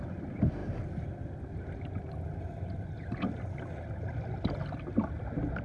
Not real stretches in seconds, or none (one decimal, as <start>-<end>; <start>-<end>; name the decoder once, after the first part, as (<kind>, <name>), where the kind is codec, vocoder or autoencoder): 0.6-3.1 (vocoder, BigVGAN v2)